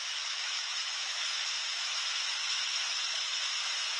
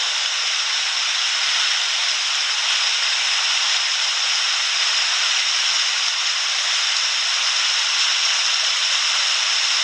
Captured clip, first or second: second